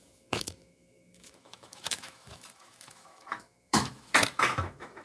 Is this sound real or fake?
fake